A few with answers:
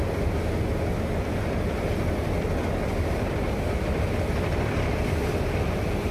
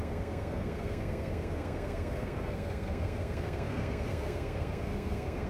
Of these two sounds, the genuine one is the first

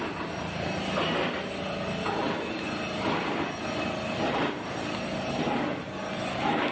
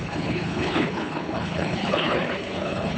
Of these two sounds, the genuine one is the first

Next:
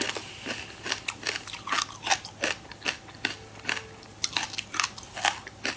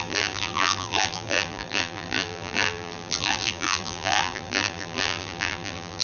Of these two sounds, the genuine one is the first